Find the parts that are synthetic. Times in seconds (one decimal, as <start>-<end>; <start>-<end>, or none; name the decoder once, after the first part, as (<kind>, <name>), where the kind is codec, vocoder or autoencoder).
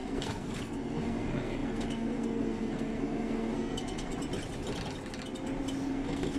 0.0-4.1 (codec, SNAC); 5.9-6.4